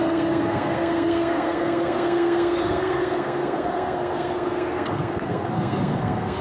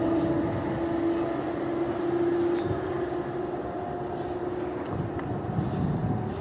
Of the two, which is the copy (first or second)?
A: first